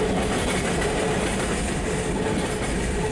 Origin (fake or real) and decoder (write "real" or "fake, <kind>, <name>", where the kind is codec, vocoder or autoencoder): real